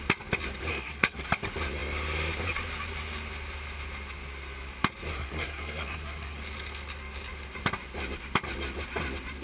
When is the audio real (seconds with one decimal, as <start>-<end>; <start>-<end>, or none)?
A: 0.0-0.7; 1.3-5.1; 6.4-9.4